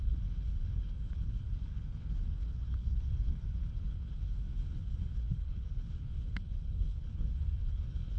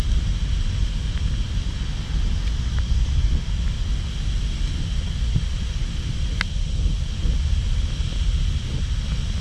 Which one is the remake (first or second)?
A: first